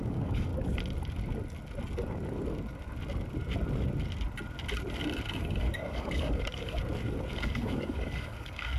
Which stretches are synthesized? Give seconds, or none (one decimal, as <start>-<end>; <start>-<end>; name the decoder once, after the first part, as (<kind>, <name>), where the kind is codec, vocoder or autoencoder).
0.0-0.5 (codec, DAC); 5.6-6.8; 7.3-8.8